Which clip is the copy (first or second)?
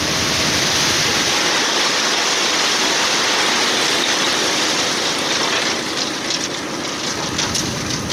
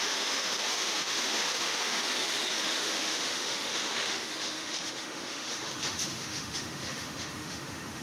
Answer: second